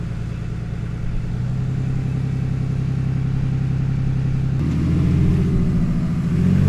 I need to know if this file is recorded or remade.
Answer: recorded